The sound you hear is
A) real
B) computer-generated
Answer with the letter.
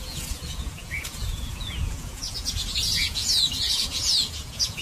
B